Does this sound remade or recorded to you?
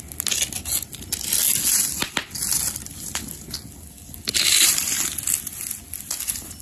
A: recorded